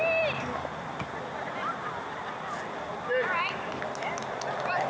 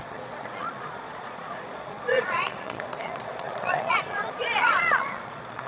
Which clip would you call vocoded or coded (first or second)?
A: second